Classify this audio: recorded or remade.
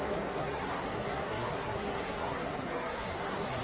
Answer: remade